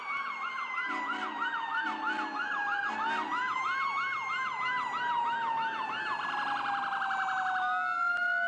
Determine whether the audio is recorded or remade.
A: recorded